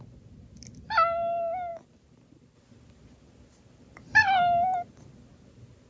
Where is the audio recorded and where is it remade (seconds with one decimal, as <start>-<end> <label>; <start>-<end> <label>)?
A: 0.0-5.9 recorded